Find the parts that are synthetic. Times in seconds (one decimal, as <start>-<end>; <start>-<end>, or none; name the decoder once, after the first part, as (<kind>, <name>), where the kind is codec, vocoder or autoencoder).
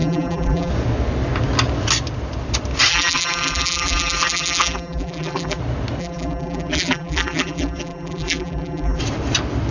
0.0-0.7 (vocoder, BigVGAN v2); 2.9-5.6; 6.0-9.0